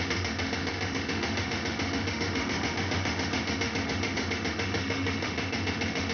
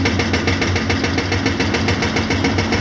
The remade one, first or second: first